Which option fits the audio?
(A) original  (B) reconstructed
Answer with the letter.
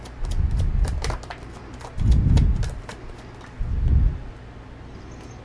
A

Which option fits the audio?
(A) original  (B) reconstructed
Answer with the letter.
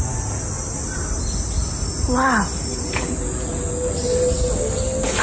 A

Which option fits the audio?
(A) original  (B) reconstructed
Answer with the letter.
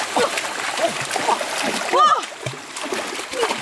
A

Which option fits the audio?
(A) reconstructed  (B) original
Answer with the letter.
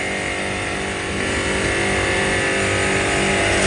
B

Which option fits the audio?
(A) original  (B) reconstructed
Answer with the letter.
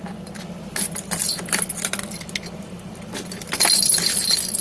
A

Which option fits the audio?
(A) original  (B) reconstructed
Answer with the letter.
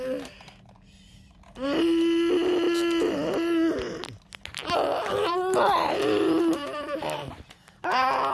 A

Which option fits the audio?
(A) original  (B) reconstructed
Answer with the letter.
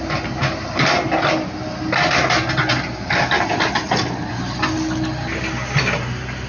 A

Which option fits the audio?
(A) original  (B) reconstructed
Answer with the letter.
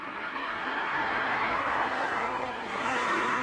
B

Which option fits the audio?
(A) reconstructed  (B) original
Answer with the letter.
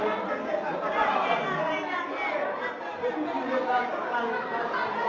B